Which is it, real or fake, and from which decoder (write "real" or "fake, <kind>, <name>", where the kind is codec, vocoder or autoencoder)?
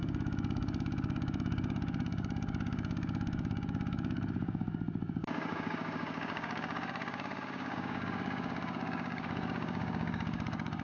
fake, codec, DAC